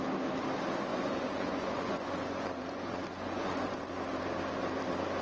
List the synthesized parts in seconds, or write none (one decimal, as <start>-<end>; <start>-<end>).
0.9-4.0